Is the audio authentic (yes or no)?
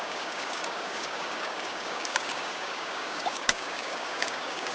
no